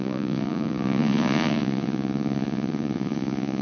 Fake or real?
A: fake